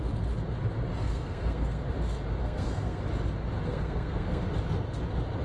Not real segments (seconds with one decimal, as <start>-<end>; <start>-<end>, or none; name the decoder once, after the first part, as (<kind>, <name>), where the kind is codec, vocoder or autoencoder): 1.0-1.9 (codec, SNAC); 2.4-3.0; 3.7-4.4